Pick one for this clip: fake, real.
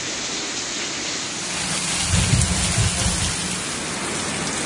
real